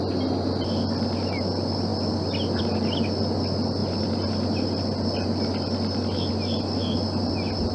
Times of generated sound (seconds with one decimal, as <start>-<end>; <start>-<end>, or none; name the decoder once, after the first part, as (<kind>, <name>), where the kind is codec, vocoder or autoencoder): none